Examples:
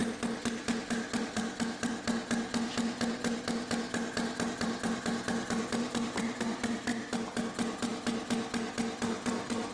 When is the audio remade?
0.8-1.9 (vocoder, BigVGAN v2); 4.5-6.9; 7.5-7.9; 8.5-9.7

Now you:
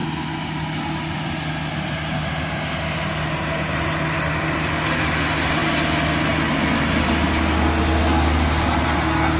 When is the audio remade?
none

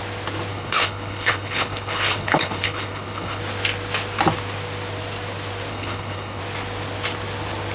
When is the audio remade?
0.5-3.4 (codec, HILCodec); 5.7-6.4

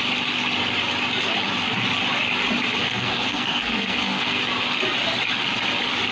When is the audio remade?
2.8-4.4 (codec, SNAC)

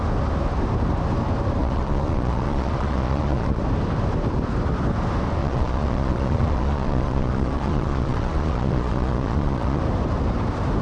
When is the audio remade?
1.6-3.6 (vocoder, Vocos); 5.4-9.8

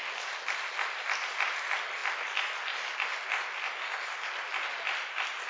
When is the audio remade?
none

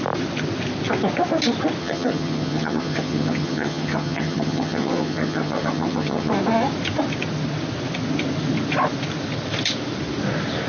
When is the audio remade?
1.8-6.3 (vocoder, HiFi-GAN)